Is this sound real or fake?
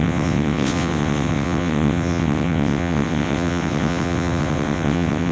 fake